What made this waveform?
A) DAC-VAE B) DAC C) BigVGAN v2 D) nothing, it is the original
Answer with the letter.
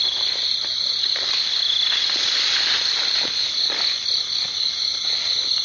C